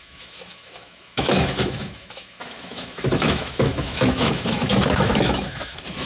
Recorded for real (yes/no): no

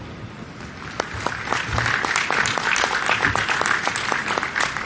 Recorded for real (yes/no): yes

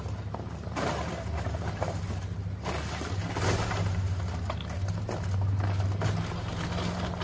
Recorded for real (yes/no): yes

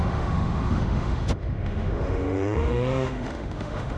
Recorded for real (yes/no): no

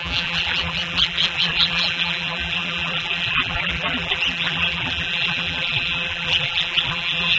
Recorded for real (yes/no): no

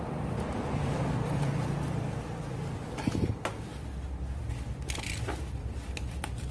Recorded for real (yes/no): no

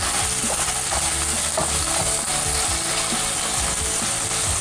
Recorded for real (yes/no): yes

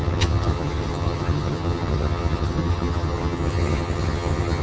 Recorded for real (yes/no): no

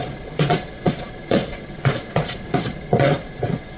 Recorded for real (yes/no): no